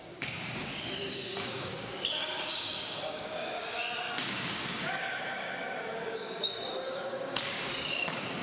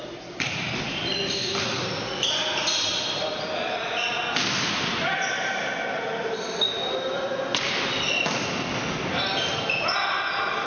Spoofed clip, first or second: first